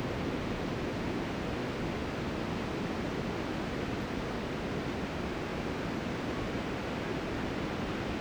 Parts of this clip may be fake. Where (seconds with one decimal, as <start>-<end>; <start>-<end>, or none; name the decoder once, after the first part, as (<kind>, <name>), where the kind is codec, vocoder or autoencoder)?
none